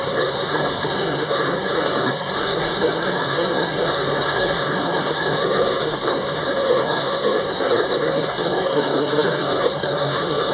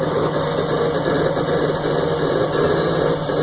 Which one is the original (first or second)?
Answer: second